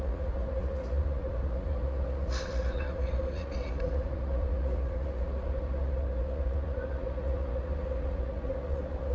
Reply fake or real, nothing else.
fake